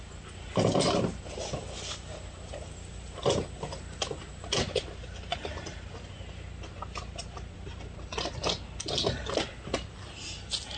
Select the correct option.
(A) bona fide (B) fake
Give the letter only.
A